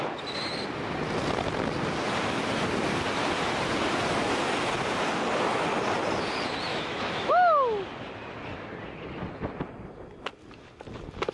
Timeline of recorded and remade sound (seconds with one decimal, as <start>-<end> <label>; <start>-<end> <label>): 0.0-6.7 recorded; 6.7-7.3 remade; 7.3-11.3 recorded